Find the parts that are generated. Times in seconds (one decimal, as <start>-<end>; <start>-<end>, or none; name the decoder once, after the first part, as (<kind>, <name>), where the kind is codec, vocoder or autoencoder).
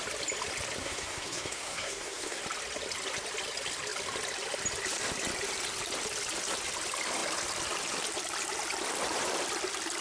0.8-2.4 (codec, SNAC)